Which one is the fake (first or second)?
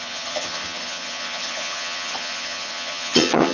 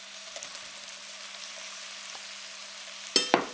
first